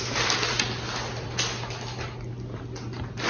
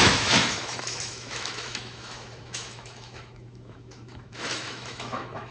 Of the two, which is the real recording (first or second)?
first